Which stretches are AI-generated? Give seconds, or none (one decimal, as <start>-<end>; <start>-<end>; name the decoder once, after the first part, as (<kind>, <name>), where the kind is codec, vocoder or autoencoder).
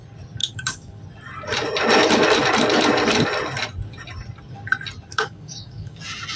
0.4-1.0 (codec, DAC); 5.1-6.0